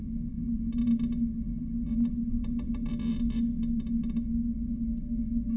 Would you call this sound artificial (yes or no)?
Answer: no